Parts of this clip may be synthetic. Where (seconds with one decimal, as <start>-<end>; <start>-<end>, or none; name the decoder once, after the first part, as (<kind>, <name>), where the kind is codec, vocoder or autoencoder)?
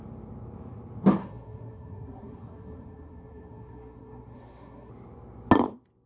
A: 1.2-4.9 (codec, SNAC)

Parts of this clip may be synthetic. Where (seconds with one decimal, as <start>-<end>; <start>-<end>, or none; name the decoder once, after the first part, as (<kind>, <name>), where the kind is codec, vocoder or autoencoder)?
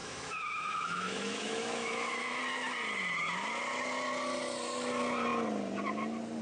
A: 0.0-2.4 (autoencoder, DAC-VAE)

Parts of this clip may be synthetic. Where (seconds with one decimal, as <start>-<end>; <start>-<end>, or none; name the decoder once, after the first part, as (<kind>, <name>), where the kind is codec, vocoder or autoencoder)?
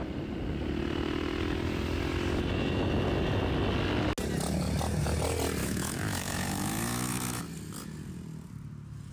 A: 5.6-7.4 (autoencoder, DAC-VAE)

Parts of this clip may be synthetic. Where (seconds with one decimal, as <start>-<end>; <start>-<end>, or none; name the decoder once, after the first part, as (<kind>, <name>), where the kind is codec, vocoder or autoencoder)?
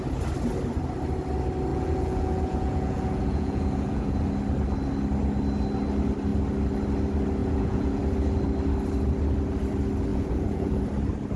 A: 1.7-4.3 (vocoder, Vocos); 7.4-8.0; 10.1-10.8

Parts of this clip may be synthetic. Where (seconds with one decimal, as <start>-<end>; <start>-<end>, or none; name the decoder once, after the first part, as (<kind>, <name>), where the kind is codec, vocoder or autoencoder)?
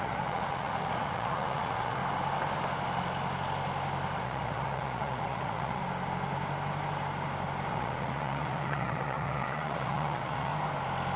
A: 0.0-2.0 (vocoder, Vocos); 4.2-5.8; 7.7-10.5